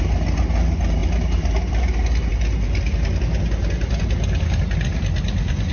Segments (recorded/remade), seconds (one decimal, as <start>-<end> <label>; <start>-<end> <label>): 0.0-5.7 recorded